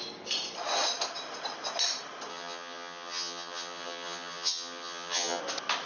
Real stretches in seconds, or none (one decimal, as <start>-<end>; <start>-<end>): 0.0-2.3; 5.4-5.9